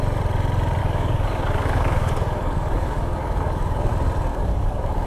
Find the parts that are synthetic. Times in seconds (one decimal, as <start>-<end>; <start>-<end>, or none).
0.8-3.9; 4.3-5.1